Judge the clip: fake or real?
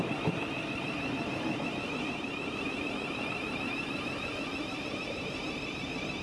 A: fake